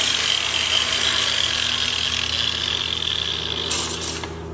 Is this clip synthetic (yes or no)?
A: no